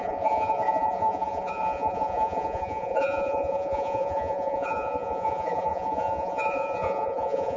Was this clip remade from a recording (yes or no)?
yes